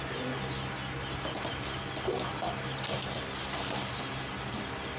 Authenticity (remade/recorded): recorded